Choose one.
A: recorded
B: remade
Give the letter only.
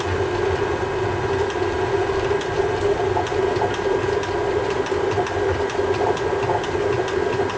A